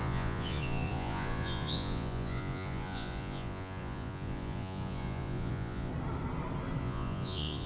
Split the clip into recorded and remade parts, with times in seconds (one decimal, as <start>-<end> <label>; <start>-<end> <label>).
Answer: 0.0-5.9 remade; 5.9-6.8 recorded; 6.8-7.7 remade